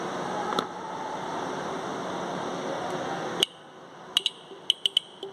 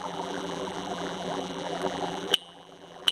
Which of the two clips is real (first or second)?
first